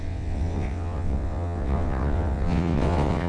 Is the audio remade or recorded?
remade